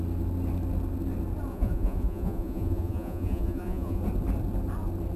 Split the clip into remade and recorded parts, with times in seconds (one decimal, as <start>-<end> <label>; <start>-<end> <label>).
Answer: 0.0-1.5 recorded; 1.5-4.0 remade; 4.0-5.2 recorded